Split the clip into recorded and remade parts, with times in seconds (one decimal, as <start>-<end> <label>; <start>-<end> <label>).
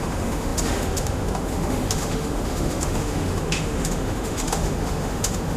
0.0-5.6 remade